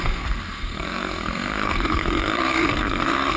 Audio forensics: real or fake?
fake